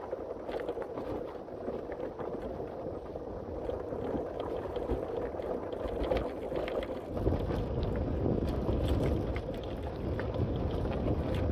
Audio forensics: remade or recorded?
recorded